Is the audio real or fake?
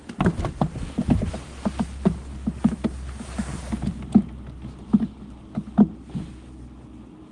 real